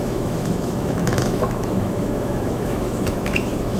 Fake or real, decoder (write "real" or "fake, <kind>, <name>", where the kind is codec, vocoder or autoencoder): fake, autoencoder, DAC-VAE